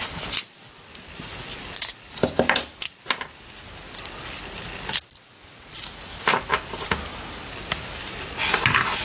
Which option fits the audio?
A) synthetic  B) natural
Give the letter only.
B